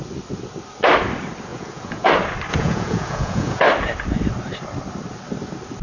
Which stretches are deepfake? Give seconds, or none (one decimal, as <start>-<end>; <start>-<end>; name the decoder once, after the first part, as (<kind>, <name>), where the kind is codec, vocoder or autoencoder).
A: 1.5-2.1 (vocoder, Vocos); 2.5-3.6